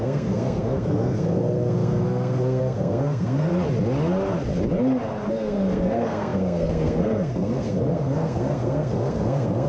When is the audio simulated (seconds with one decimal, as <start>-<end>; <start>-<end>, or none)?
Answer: 0.0-3.5; 5.3-9.7